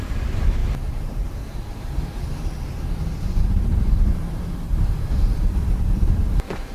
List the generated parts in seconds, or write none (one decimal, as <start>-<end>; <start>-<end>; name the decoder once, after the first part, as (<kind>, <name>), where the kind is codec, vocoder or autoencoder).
0.6-1.9 (vocoder, BigVGAN v2); 4.7-6.7